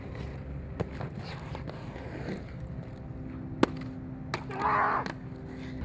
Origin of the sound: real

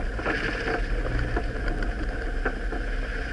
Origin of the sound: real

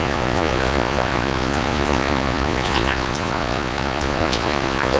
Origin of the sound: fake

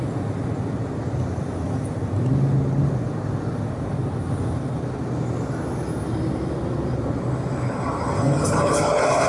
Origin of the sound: real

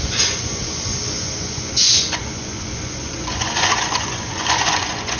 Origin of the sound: fake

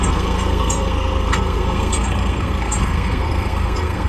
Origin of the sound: fake